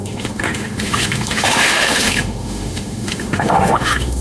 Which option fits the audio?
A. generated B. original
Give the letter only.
A